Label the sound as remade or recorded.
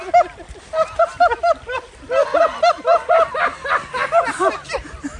recorded